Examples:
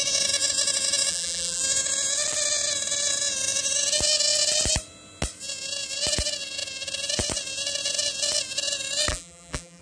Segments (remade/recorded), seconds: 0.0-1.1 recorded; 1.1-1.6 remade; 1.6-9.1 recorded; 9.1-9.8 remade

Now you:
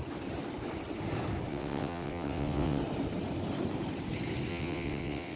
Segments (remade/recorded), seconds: 0.0-1.5 recorded; 1.5-2.8 remade; 2.8-4.5 recorded; 4.5-5.4 remade

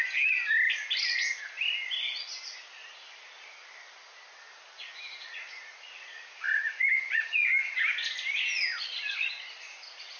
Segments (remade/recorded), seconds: 0.0-5.2 recorded; 5.2-7.5 remade; 7.5-10.2 recorded

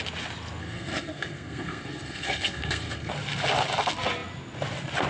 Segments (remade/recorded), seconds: 0.0-0.6 recorded; 0.6-3.1 remade; 3.1-5.1 recorded